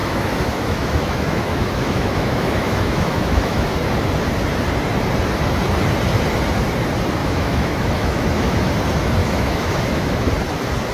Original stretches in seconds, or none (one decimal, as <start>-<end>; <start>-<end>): 3.7-7.2; 8.7-9.2; 10.3-10.9